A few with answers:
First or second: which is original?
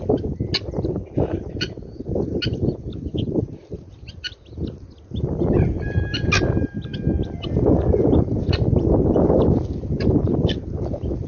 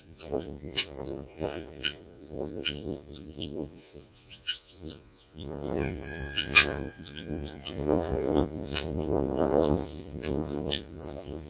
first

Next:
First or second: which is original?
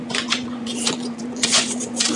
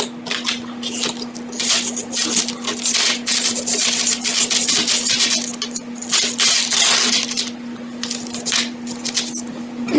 second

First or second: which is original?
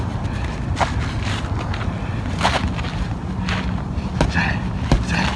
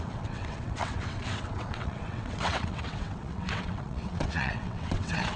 first